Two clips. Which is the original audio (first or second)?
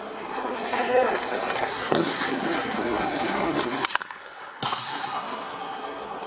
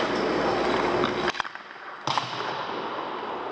second